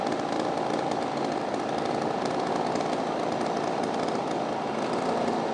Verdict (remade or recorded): remade